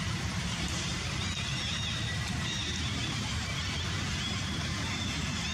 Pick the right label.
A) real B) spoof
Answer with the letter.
B